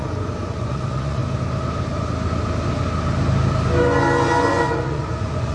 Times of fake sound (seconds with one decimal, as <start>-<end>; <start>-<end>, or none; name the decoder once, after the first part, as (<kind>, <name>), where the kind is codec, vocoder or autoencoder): 0.0-1.2 (vocoder, Vocos); 4.5-5.5